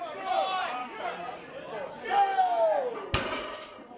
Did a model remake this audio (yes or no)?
no